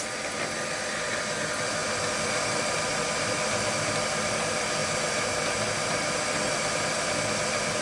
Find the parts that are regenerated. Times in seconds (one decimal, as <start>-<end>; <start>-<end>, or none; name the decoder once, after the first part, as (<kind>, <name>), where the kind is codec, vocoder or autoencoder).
none